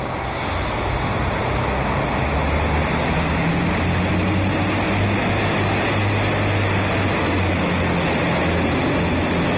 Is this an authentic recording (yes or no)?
yes